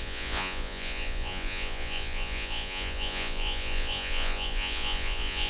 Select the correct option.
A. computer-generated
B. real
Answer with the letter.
A